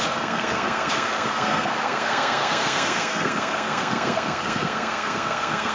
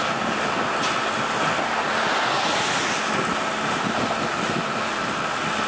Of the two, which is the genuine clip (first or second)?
second